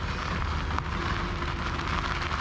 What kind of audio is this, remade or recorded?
recorded